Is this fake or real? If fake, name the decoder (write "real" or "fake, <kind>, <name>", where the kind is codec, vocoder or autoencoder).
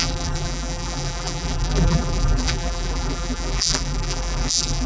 fake, vocoder, BigVGAN v2